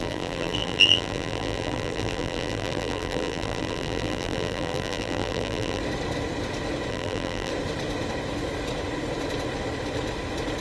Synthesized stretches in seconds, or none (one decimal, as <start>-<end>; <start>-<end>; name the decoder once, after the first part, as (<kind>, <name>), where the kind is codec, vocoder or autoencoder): 0.0-5.8 (vocoder, BigVGAN v2); 6.9-7.5